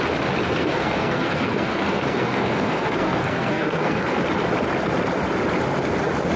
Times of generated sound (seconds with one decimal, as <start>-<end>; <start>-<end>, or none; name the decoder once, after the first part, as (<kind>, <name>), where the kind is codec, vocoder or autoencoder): 0.4-4.2 (codec, SNAC)